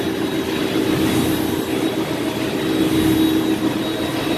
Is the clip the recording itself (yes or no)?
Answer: yes